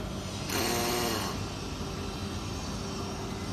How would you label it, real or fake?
real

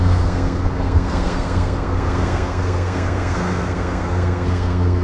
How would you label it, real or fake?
fake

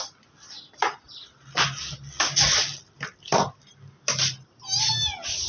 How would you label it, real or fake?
real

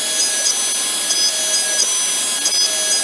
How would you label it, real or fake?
real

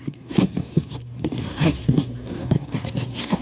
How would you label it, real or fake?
fake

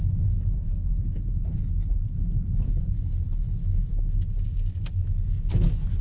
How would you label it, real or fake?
real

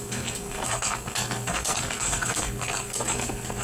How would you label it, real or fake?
fake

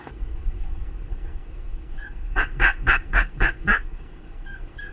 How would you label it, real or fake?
fake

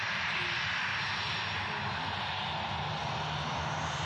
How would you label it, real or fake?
real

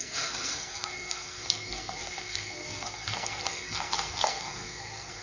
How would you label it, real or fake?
fake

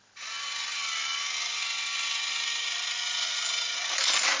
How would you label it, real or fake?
real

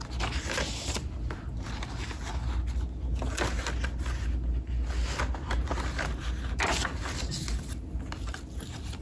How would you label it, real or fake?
real